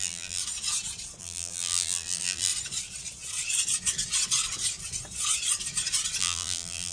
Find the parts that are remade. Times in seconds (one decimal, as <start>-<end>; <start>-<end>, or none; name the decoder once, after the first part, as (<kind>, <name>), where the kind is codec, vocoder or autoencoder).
0.0-0.4 (vocoder, BigVGAN v2); 1.2-2.5; 6.2-6.9